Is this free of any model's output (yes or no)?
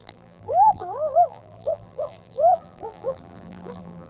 no